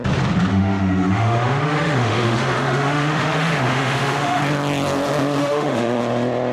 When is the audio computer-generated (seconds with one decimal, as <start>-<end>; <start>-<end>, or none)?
0.5-4.4; 5.4-6.0